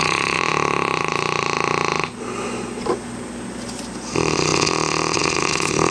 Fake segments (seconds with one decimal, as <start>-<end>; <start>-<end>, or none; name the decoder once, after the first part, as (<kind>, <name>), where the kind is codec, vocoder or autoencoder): none